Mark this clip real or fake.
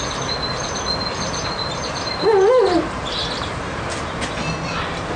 real